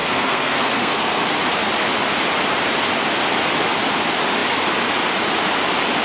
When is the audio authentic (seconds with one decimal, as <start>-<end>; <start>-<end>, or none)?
1.2-6.0